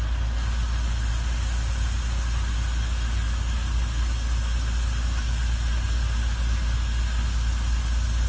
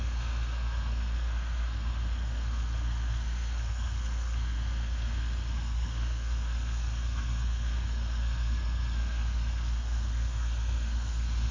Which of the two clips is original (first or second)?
first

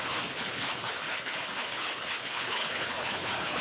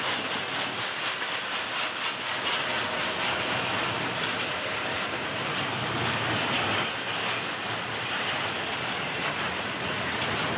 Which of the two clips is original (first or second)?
second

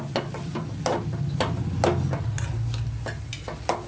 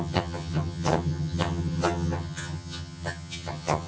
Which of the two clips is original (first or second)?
first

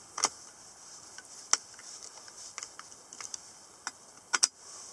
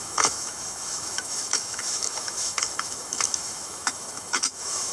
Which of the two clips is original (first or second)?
first